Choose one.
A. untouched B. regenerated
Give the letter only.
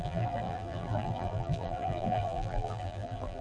B